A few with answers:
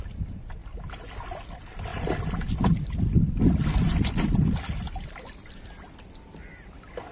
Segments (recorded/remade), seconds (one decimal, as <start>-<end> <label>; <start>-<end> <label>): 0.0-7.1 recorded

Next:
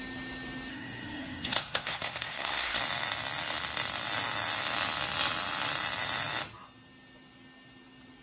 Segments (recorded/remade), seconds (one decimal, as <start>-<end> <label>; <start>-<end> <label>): 0.0-0.7 recorded; 0.7-2.8 remade; 2.8-8.2 recorded

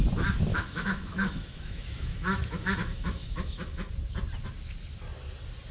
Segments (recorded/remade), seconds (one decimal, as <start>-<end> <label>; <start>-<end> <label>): 0.0-0.5 recorded; 0.5-3.9 remade; 3.9-5.7 recorded

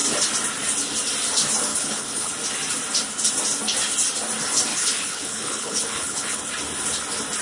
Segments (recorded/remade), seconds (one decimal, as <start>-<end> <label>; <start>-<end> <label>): 0.0-1.7 recorded; 1.7-2.3 remade; 2.3-4.7 recorded; 4.7-6.4 remade; 6.4-7.4 recorded